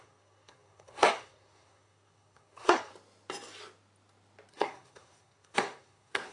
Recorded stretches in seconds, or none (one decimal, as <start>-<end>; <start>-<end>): 2.9-4.5